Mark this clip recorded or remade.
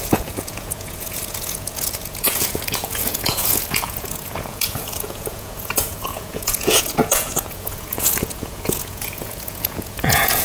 remade